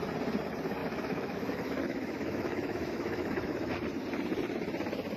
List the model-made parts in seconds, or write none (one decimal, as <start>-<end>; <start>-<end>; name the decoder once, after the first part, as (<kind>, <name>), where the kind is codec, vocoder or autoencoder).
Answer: 0.8-3.7 (autoencoder, DAC-VAE)